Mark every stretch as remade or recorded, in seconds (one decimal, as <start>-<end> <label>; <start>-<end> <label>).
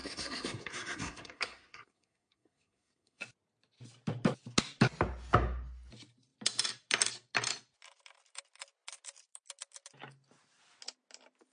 0.0-3.2 remade; 3.2-11.5 recorded